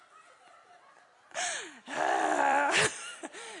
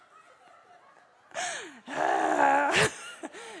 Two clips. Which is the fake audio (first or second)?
first